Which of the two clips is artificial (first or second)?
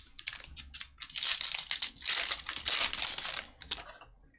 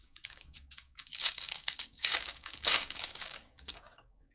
second